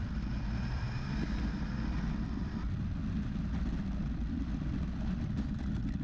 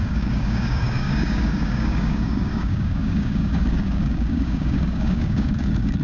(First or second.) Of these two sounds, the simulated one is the second